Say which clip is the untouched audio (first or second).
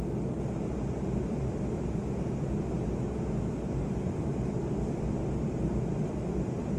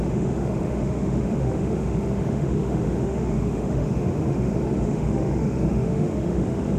first